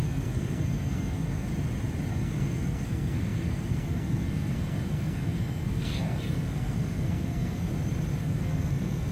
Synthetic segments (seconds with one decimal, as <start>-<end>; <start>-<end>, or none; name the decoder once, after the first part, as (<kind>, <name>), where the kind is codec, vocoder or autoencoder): 0.0-1.5 (codec, SNAC); 2.1-7.7; 8.2-9.1